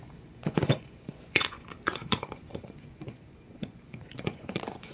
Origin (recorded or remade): remade